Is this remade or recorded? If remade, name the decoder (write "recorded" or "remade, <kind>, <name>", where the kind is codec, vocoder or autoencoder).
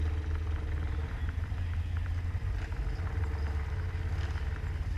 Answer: recorded